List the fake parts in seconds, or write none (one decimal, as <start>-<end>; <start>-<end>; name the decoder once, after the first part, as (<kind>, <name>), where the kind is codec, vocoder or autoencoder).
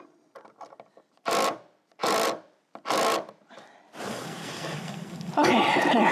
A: 4.1-5.3 (codec, SNAC)